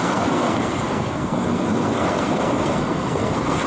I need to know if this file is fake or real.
fake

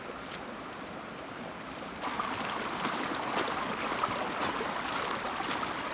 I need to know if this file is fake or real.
real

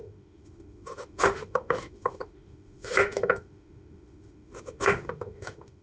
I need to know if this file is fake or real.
fake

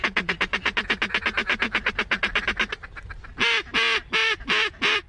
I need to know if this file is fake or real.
real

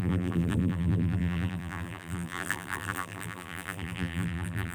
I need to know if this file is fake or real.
fake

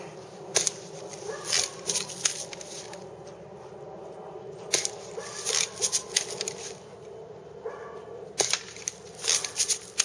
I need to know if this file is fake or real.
real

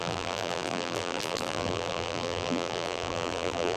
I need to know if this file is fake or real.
fake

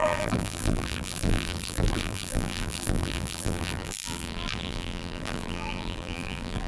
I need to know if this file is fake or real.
fake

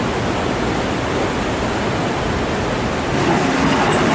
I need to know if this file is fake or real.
real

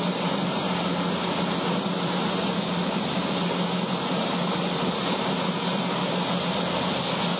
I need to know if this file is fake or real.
real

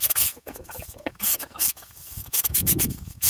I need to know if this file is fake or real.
fake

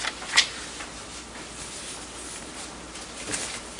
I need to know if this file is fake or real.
real